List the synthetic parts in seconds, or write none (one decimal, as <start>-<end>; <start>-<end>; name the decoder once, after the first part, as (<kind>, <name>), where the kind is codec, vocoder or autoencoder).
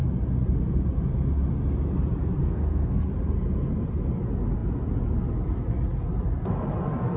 2.4-3.1 (codec, SNAC)